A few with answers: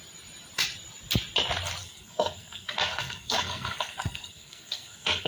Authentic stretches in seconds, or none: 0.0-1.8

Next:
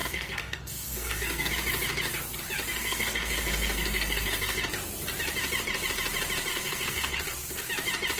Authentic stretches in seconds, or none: 1.5-2.7; 4.6-6.5; 7.2-8.2